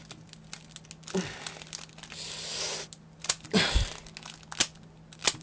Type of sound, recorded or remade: recorded